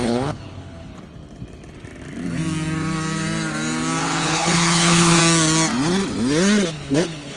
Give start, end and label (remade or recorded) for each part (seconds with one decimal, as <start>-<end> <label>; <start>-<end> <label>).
0.0-0.9 remade; 0.9-4.0 recorded; 4.0-5.2 remade; 5.2-6.7 recorded; 6.7-7.4 remade